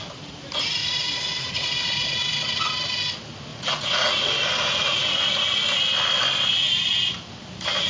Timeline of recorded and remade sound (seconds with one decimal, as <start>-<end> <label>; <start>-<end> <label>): 0.0-0.8 recorded; 0.8-2.6 remade; 2.6-3.5 recorded; 3.5-4.3 remade; 4.3-4.8 recorded; 4.8-5.6 remade; 5.6-7.9 recorded